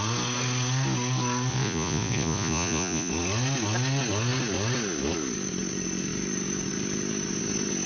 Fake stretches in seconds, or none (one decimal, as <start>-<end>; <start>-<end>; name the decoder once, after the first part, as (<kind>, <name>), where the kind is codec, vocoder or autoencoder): 1.5-3.1 (vocoder, Vocos)